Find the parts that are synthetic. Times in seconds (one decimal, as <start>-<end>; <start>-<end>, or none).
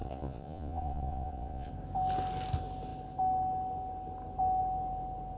0.0-1.7